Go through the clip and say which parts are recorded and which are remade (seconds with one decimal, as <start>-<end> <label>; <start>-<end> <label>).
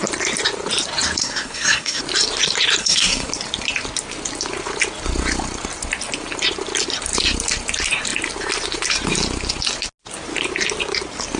0.0-1.2 recorded; 1.2-2.0 remade; 2.0-2.8 recorded; 2.8-3.3 remade; 3.3-11.4 recorded